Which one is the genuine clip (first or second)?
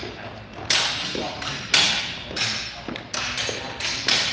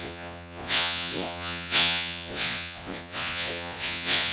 first